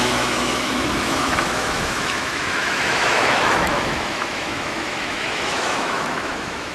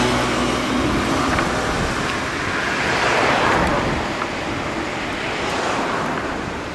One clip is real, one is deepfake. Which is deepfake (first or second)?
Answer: first